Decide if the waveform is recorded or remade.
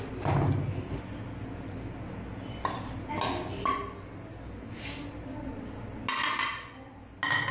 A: recorded